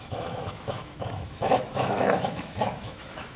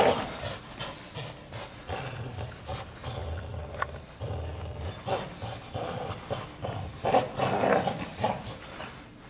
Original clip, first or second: second